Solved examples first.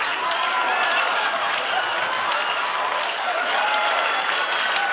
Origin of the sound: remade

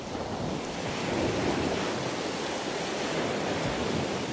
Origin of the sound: recorded